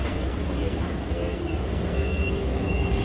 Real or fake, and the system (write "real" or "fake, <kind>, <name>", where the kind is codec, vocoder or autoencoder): fake, codec, SNAC